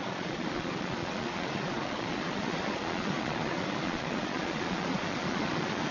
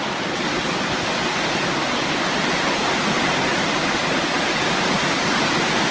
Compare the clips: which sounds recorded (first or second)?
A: second